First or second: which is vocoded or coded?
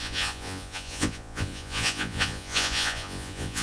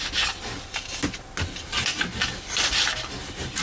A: first